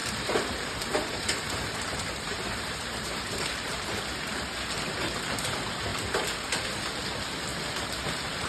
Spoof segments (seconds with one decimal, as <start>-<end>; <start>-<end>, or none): 0.0-4.0; 5.9-6.8